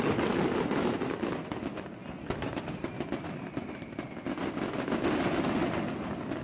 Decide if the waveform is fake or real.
real